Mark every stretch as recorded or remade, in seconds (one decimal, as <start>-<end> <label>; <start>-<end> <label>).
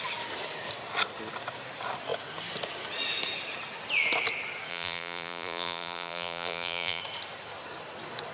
0.0-4.7 recorded; 4.7-7.0 remade; 7.0-8.3 recorded